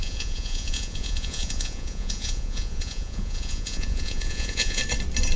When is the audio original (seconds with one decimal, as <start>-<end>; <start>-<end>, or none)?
4.8-5.4